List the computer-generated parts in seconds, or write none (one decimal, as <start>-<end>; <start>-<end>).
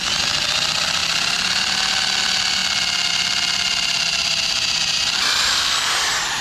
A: 4.1-5.6